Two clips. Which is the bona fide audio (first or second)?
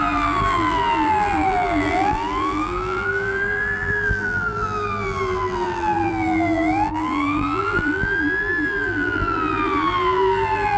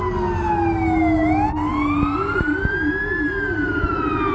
second